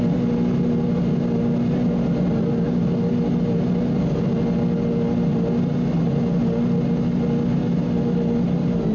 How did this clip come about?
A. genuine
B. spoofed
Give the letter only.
A